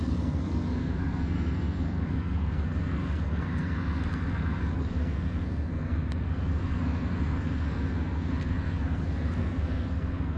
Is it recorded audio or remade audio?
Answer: remade